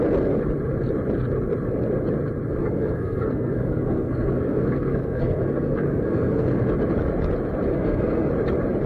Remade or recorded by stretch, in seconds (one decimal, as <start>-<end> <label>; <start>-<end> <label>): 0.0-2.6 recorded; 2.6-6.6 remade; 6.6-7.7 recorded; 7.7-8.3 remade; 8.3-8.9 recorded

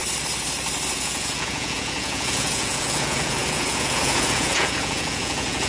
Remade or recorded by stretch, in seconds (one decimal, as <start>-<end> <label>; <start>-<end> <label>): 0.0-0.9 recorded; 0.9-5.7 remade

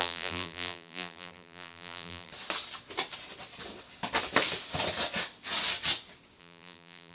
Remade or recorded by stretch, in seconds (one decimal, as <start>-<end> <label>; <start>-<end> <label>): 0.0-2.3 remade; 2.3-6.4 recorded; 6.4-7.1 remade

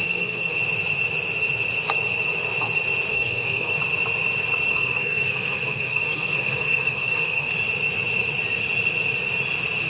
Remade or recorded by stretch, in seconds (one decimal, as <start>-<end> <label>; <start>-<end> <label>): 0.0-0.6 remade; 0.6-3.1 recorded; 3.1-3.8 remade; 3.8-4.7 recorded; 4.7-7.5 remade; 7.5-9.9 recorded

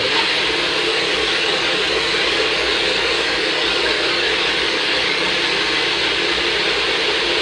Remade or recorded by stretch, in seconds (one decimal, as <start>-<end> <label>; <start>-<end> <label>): 0.0-0.9 recorded; 0.9-5.3 remade; 5.3-7.4 recorded

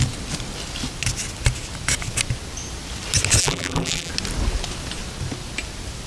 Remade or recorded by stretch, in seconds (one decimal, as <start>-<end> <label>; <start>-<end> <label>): 0.0-3.4 recorded; 3.4-4.1 remade; 4.1-6.1 recorded

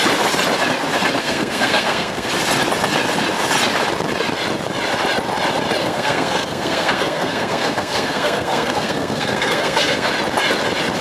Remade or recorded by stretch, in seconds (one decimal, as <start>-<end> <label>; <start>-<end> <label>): 0.0-1.2 recorded; 1.2-2.3 remade; 2.3-5.8 recorded; 5.8-10.1 remade; 10.1-11.0 recorded